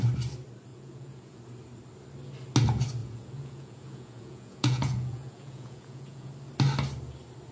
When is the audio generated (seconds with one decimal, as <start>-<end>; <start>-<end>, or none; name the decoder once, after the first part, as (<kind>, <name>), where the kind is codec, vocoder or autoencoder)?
0.7-1.4 (vocoder, Vocos); 3.0-6.3